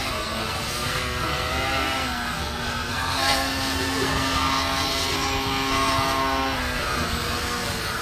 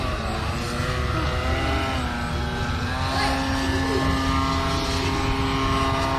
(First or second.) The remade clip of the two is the first